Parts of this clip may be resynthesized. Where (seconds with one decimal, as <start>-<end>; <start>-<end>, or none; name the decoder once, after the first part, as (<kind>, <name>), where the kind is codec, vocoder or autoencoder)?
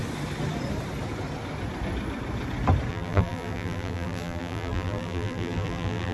2.9-6.1 (vocoder, BigVGAN v2)